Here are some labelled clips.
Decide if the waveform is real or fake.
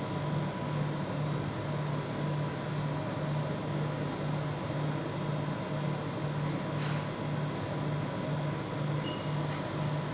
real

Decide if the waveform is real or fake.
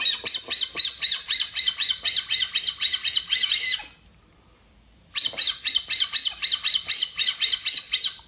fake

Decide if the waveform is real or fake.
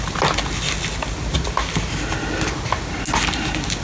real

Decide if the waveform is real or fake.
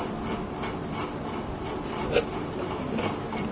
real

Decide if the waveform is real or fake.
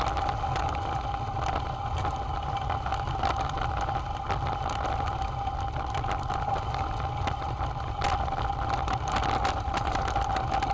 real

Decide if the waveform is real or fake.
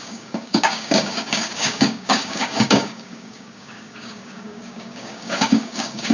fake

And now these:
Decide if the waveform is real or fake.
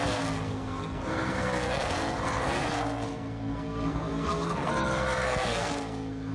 fake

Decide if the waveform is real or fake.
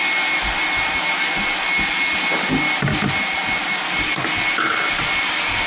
real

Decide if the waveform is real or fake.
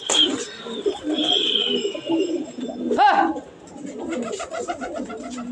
real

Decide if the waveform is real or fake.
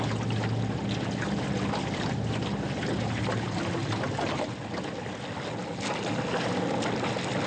real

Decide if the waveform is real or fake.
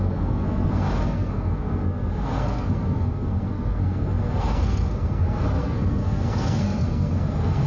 fake